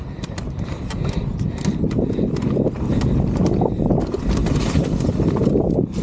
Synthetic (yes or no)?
no